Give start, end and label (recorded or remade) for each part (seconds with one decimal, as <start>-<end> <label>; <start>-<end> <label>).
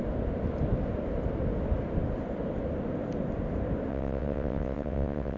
0.0-3.9 recorded; 3.9-5.4 remade